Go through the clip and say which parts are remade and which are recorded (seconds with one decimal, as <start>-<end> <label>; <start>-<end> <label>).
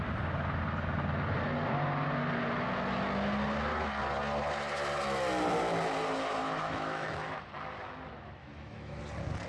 0.0-6.4 recorded; 6.4-7.5 remade; 7.5-8.4 recorded; 8.4-9.0 remade; 9.0-9.5 recorded